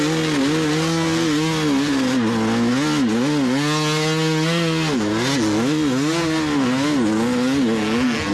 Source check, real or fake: real